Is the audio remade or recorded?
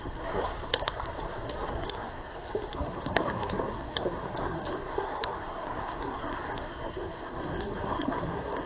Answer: remade